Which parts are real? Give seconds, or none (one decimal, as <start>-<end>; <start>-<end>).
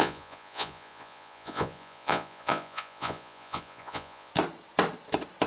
4.3-5.5